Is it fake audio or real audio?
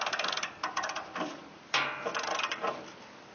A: real